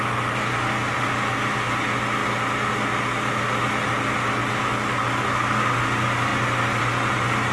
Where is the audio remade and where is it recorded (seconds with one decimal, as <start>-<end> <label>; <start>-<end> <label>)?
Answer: 0.0-7.5 recorded